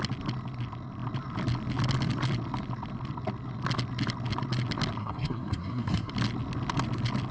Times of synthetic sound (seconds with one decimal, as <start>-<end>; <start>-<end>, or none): 5.0-6.1